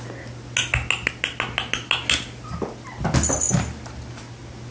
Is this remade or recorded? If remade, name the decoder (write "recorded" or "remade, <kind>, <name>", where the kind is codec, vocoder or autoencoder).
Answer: recorded